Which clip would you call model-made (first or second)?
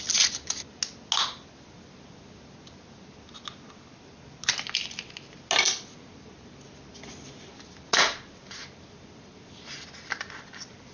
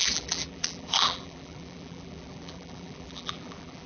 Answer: second